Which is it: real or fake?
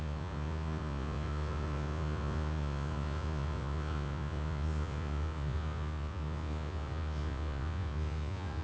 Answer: fake